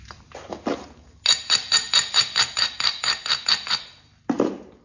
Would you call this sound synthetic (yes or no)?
no